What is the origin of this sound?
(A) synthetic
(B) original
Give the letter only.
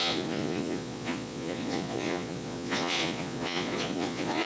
A